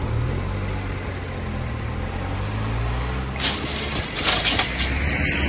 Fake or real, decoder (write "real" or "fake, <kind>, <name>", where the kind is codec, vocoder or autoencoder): real